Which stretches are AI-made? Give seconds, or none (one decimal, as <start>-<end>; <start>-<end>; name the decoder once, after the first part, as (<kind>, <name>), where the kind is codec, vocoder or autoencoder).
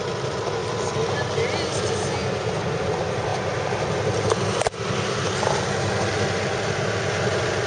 none